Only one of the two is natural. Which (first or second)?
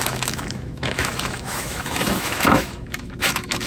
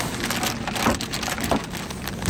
second